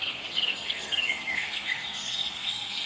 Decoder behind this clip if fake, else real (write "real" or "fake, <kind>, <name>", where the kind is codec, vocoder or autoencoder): fake, codec, SNAC